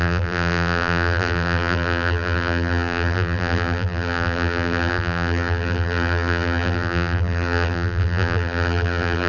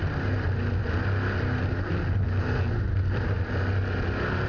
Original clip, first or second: second